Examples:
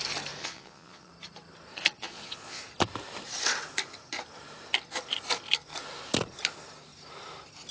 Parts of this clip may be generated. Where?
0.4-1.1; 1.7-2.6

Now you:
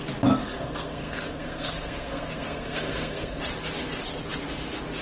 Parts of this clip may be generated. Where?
0.4-3.4

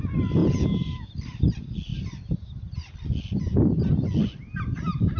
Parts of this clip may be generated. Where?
0.4-1.1

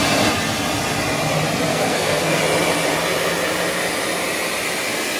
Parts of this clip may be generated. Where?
1.7-2.4

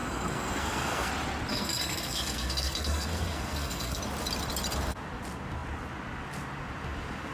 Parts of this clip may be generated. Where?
0.0-1.1; 1.5-4.0

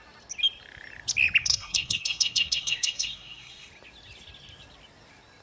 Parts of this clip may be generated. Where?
1.4-3.7